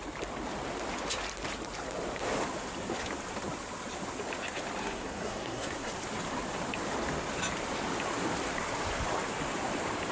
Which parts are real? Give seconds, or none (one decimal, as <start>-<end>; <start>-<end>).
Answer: 0.0-4.8; 5.9-10.1